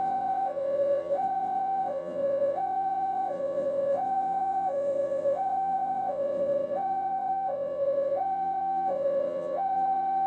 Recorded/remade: remade